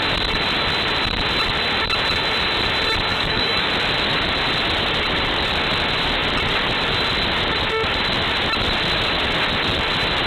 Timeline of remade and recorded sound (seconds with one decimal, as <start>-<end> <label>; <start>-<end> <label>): 0.0-3.1 recorded; 3.1-3.7 remade; 3.7-10.3 recorded